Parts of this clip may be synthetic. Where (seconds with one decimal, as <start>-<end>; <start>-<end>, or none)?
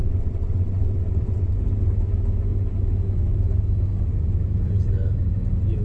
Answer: 0.0-1.5